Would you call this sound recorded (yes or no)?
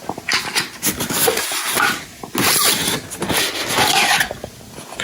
yes